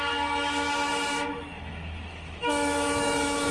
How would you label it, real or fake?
fake